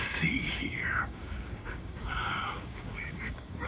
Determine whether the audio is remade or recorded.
remade